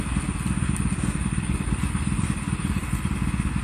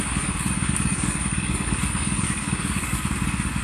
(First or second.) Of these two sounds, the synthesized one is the second